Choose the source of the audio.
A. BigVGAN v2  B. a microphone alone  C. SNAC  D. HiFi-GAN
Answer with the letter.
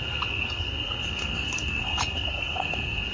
C